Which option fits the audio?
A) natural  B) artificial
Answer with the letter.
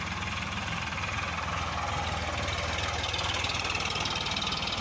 A